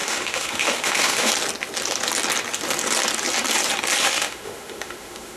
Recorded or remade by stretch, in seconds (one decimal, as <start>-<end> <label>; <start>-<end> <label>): 0.0-1.3 remade; 1.3-4.0 recorded; 4.0-5.4 remade